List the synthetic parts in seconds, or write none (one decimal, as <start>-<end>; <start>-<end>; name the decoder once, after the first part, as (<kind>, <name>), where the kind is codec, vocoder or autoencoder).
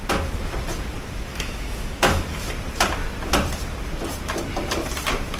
1.3-2.5 (autoencoder, DAC-VAE)